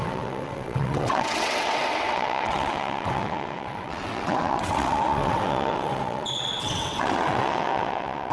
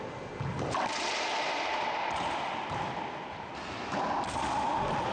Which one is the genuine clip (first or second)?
second